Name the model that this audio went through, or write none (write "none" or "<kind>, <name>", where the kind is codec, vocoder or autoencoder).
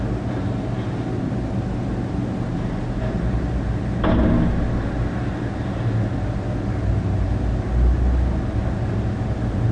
none